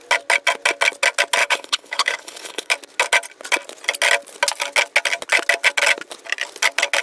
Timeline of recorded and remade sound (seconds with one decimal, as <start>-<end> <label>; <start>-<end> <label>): 0.0-1.4 recorded; 1.4-2.7 remade; 2.7-7.0 recorded